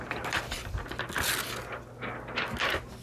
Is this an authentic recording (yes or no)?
yes